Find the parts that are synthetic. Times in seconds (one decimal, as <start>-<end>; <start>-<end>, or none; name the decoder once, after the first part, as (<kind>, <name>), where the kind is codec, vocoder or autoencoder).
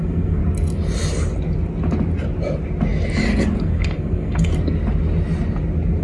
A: 0.0-0.4 (codec, SNAC); 3.6-4.5